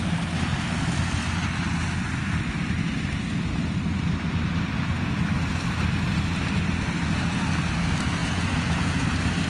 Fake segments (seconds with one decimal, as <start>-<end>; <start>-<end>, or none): 8.2-9.1